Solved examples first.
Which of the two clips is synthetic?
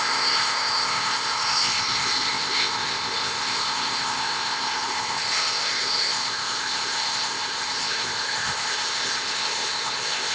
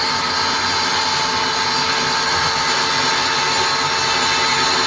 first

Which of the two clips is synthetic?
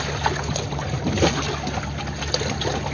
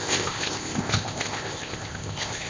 second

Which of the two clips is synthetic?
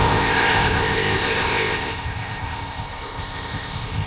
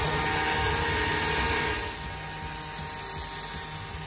first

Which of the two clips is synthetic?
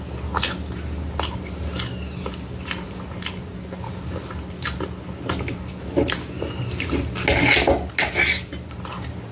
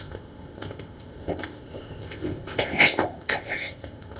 second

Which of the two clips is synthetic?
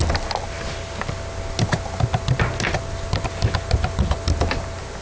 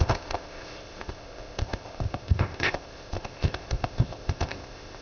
second